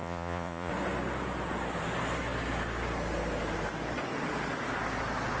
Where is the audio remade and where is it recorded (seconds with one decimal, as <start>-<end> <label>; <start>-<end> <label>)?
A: 0.0-0.7 remade; 0.7-5.4 recorded